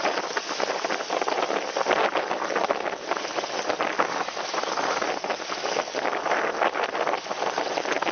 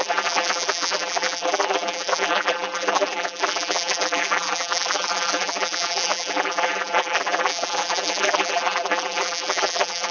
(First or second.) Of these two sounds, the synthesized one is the second